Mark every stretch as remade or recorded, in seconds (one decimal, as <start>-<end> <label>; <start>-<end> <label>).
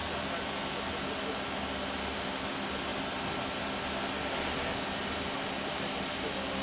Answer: 0.0-6.6 recorded